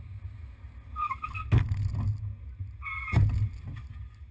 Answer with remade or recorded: recorded